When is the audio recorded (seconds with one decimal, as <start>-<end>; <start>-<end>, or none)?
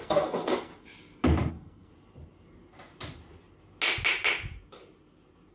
0.7-1.5; 1.9-5.5